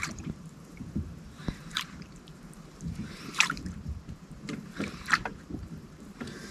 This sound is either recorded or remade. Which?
remade